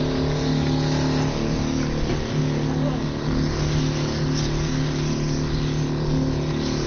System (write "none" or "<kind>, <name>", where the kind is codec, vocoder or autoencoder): none